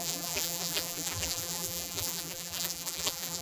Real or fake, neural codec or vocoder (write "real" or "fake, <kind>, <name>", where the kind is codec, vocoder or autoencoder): fake, vocoder, BigVGAN v2